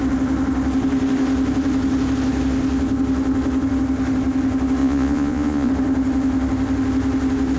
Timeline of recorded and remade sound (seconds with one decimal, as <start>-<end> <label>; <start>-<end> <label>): 0.0-4.8 recorded; 4.8-5.7 remade; 5.7-7.6 recorded